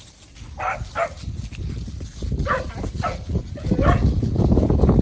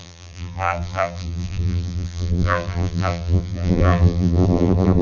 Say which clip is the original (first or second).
first